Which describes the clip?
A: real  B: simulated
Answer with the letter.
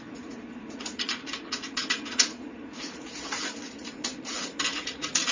B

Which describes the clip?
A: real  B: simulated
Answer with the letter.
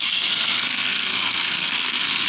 B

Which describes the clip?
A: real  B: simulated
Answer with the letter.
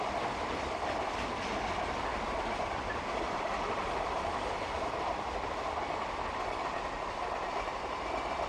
A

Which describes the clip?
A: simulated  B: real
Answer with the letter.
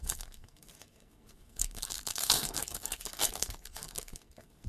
A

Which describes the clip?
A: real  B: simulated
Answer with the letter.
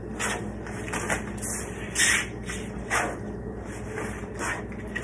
A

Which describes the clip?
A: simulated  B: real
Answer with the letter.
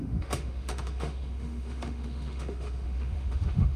A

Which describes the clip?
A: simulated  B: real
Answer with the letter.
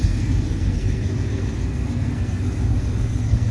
A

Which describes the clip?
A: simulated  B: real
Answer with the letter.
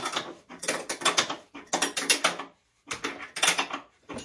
B